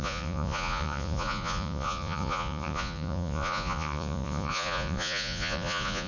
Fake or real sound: fake